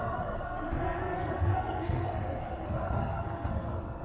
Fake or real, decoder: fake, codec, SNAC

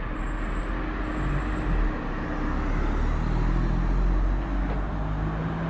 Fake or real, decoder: real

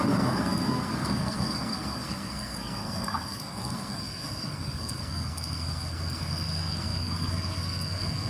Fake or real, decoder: fake, codec, SNAC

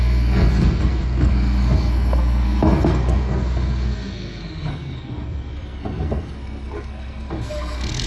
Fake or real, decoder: fake, codec, SNAC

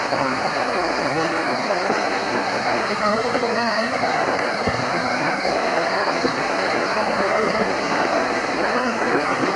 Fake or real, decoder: fake, codec, SNAC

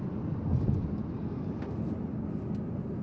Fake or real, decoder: real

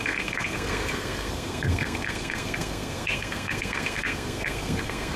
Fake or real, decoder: fake, codec, SNAC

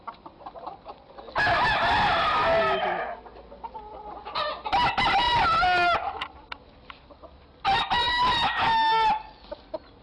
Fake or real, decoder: real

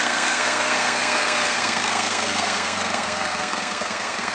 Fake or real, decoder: fake, codec, SNAC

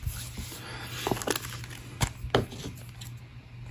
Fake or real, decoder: real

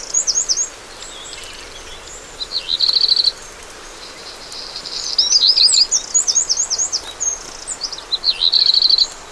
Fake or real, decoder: real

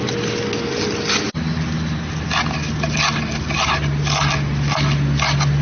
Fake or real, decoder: real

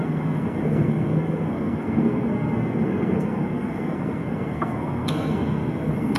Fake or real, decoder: fake, codec, SNAC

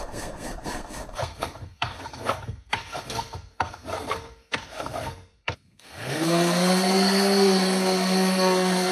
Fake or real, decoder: fake, codec, SNAC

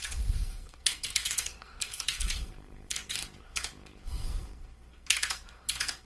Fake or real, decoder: fake, codec, SNAC